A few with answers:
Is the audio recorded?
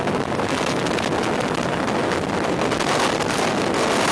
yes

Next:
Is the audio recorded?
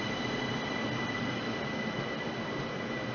yes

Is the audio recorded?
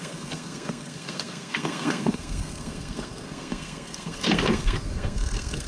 no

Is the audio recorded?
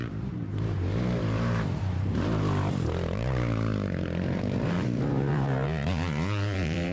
no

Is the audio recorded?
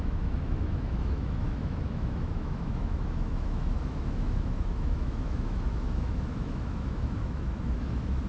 no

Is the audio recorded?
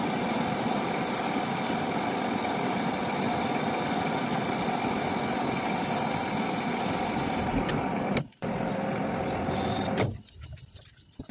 yes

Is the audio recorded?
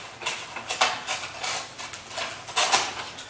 yes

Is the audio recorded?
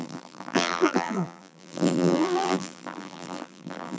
no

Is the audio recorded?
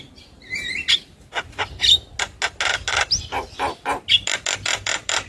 yes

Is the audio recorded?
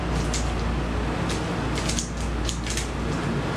yes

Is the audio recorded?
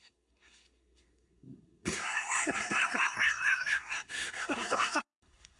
no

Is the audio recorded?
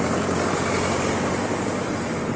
no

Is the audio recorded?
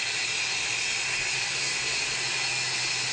yes